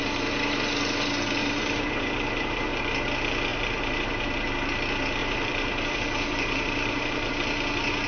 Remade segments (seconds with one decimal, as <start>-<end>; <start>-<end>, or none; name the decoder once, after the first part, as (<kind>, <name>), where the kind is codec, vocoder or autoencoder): 1.4-2.8 (vocoder, BigVGAN v2); 3.5-4.5; 5.2-7.3